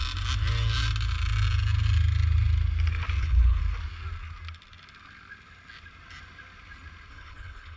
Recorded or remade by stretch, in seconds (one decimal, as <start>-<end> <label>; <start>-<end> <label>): 0.0-3.2 recorded; 3.2-3.6 remade; 3.6-7.1 recorded; 7.1-7.8 remade